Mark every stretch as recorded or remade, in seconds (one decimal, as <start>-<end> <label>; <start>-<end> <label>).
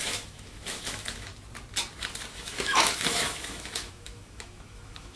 0.0-1.3 remade; 1.3-2.3 recorded; 2.3-5.2 remade